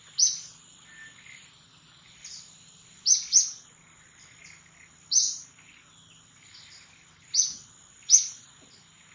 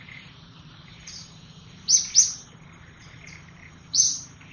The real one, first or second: first